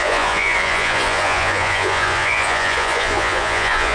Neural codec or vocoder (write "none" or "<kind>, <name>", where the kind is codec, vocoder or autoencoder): vocoder, Vocos